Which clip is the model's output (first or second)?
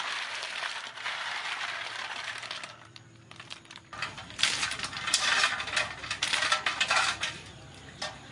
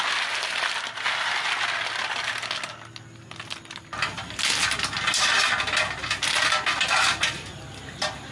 first